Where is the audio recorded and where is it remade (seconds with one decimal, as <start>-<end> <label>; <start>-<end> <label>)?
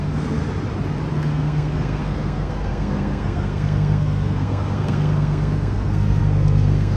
0.0-0.4 remade; 0.4-1.1 recorded; 1.1-7.0 remade